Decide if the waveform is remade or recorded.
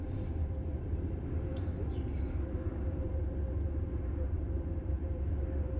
remade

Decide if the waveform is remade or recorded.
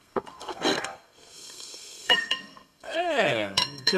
remade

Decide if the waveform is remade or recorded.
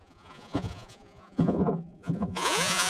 remade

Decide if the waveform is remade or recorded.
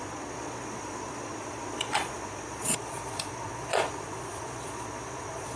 remade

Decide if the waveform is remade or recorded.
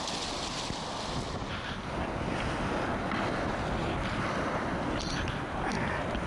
recorded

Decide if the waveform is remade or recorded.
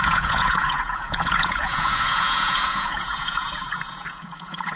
remade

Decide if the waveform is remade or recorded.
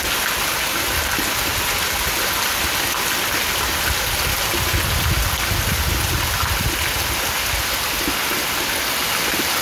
recorded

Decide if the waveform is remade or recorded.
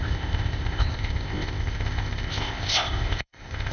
remade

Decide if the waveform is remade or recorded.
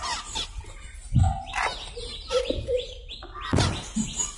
recorded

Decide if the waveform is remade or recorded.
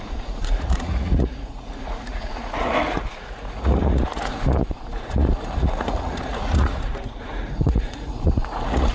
remade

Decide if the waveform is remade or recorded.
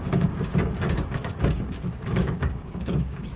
remade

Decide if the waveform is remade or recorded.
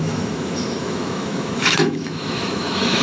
remade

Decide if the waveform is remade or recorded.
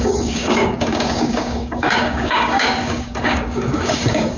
remade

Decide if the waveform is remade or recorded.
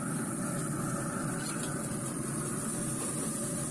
recorded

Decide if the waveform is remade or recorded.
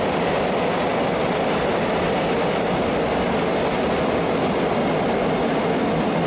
recorded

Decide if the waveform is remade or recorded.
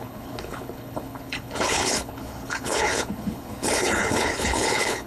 remade